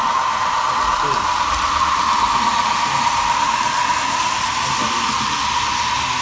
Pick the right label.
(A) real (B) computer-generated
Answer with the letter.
A